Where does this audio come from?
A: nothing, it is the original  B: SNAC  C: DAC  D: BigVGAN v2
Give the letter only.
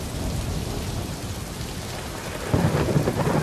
D